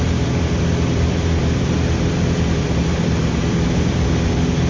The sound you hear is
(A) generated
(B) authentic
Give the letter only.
A